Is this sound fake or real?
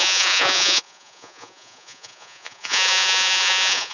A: fake